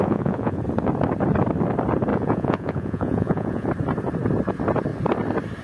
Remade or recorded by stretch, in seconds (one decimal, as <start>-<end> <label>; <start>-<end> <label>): 0.0-0.6 remade; 0.6-2.1 recorded; 2.1-3.7 remade; 3.7-5.6 recorded